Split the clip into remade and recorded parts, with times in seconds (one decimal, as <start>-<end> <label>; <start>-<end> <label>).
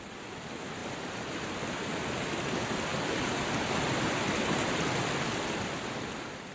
0.0-6.5 recorded